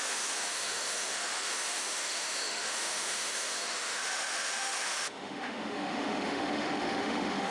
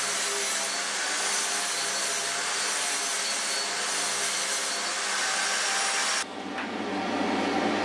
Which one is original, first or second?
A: second